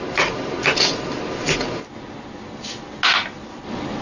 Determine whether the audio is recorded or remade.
recorded